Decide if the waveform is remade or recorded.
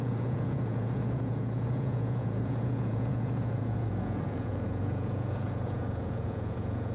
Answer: remade